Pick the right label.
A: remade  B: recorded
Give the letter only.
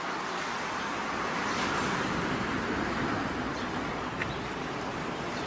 A